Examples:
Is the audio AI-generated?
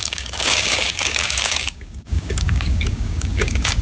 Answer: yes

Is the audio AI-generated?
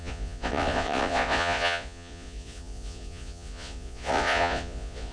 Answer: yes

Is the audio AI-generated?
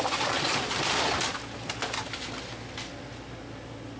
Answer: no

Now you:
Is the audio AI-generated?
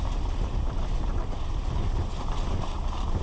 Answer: no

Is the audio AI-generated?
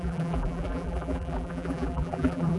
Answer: yes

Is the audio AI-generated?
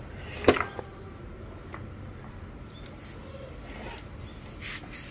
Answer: no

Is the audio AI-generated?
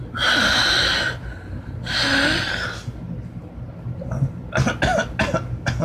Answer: no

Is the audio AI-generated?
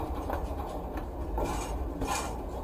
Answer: no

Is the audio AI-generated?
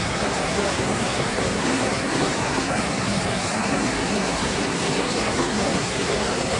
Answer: yes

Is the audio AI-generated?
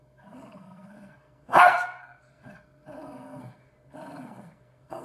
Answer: yes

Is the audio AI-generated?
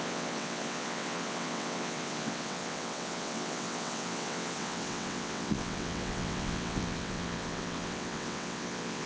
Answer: yes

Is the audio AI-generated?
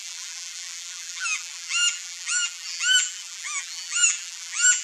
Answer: yes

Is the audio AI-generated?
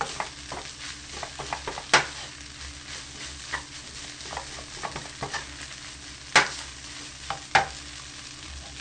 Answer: no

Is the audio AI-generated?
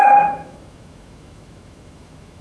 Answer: yes